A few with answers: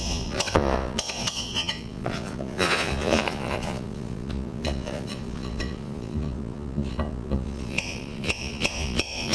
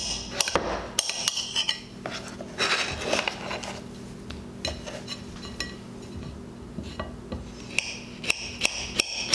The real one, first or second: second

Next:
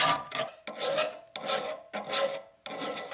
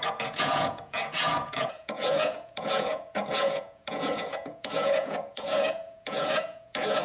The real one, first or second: first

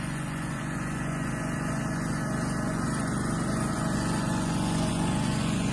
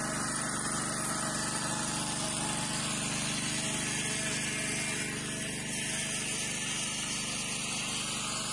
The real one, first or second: second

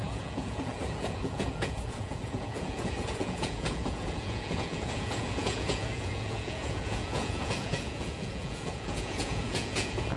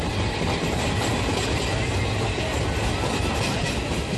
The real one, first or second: second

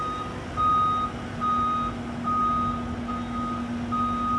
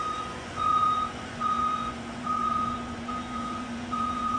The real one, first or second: first